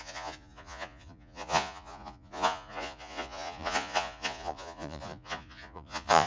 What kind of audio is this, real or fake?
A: fake